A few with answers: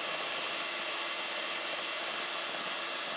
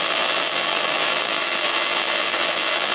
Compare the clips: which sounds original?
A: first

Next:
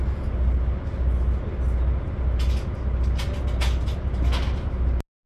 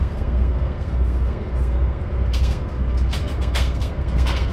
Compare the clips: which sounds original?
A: first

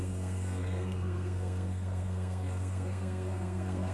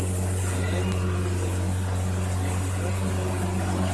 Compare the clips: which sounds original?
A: second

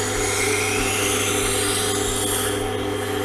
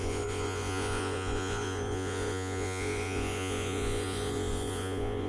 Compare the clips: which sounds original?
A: first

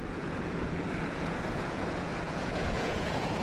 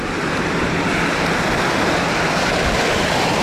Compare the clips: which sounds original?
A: second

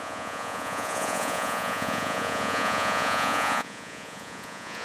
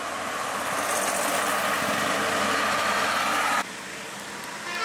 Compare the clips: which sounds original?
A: second